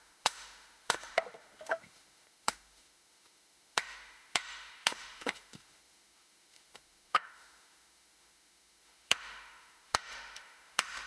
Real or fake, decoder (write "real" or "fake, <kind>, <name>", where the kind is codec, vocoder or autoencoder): fake, autoencoder, DAC-VAE